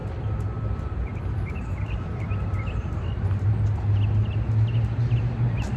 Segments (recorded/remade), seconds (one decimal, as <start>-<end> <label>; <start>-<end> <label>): 0.0-3.5 remade; 3.5-5.8 recorded